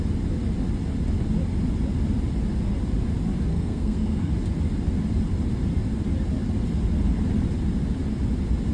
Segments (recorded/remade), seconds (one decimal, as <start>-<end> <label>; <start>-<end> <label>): 0.0-3.5 recorded; 3.5-4.3 remade; 4.3-8.7 recorded